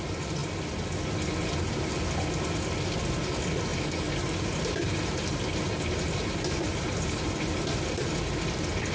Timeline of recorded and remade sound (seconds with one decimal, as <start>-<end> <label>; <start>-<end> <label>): 0.0-3.7 recorded; 3.7-8.2 remade; 8.2-8.9 recorded

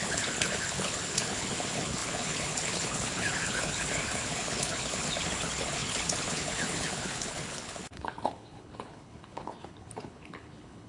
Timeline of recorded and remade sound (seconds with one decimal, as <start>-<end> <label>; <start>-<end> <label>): 0.0-10.9 remade

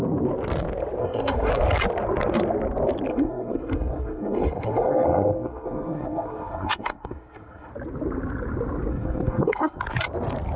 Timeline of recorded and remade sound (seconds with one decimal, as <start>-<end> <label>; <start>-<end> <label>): 0.0-1.0 recorded; 1.0-1.5 remade; 1.5-3.1 recorded; 3.1-7.7 remade; 7.7-8.9 recorded; 8.9-9.8 remade; 9.8-10.6 recorded

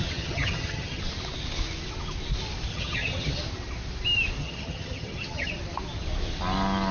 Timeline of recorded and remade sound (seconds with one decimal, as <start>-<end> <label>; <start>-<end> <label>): 0.0-1.0 remade; 1.0-2.7 recorded; 2.7-3.4 remade; 3.4-4.4 recorded; 4.4-5.6 remade; 5.6-6.9 recorded

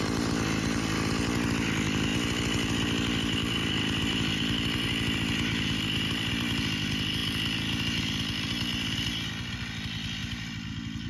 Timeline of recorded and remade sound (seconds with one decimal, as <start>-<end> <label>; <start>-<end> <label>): 0.0-2.1 recorded; 2.1-6.3 remade; 6.3-8.7 recorded; 8.7-9.3 remade; 9.3-10.2 recorded; 10.2-11.1 remade

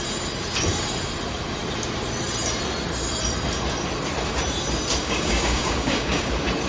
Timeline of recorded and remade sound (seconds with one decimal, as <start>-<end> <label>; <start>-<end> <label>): 0.0-5.0 recorded; 5.0-6.3 remade; 6.3-6.7 recorded